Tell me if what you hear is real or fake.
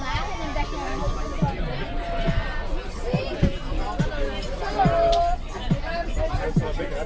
real